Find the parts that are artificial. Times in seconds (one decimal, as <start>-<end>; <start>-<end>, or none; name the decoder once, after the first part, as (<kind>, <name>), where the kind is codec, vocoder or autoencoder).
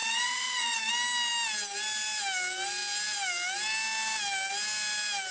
0.0-0.9 (vocoder, Vocos)